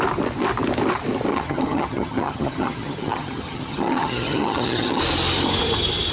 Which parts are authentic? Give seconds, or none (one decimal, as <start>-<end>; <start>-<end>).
0.0-1.3; 5.0-6.1